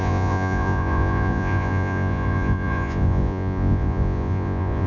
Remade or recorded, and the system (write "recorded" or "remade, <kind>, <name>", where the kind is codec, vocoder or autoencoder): remade, vocoder, Vocos